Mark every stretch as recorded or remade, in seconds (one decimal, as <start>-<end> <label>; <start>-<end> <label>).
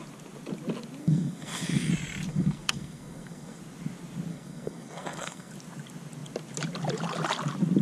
0.0-1.0 recorded; 1.0-1.9 remade; 1.9-2.3 recorded; 2.3-3.6 remade; 3.6-4.3 recorded; 4.3-5.5 remade; 5.5-7.8 recorded